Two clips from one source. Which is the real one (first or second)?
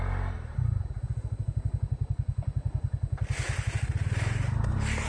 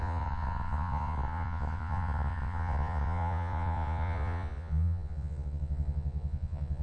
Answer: first